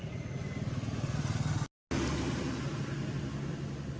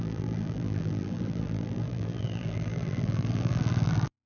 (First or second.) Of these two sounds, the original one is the first